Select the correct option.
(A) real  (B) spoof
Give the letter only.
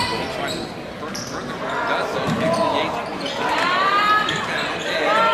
A